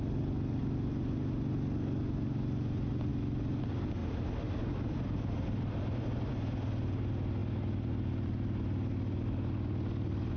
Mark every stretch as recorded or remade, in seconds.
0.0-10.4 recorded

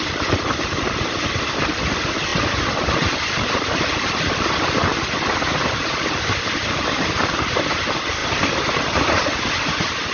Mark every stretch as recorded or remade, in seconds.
0.0-4.9 remade; 4.9-5.6 recorded; 5.6-10.1 remade

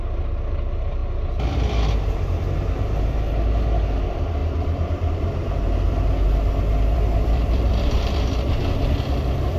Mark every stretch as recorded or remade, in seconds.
0.0-4.4 recorded; 4.4-8.5 remade; 8.5-9.6 recorded

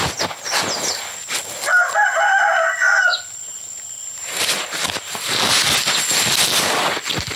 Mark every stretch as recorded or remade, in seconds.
0.0-4.0 recorded; 4.0-5.5 remade; 5.5-7.4 recorded

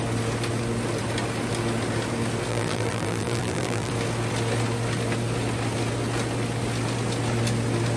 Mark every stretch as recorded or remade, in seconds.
0.0-2.5 recorded; 2.5-3.9 remade; 3.9-8.0 recorded

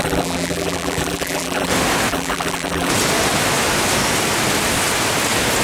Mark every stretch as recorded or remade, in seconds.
0.0-1.7 remade; 1.7-2.1 recorded; 2.1-2.9 remade; 2.9-5.6 recorded

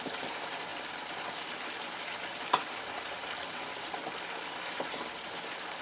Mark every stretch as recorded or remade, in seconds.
0.0-5.8 recorded

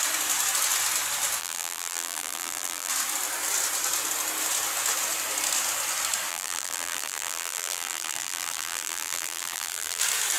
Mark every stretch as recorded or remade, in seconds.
0.0-1.4 recorded; 1.4-2.9 remade; 2.9-6.3 recorded; 6.3-10.0 remade; 10.0-10.4 recorded